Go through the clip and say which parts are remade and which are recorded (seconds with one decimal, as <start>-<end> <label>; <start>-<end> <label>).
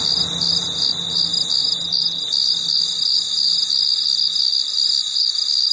0.0-5.7 recorded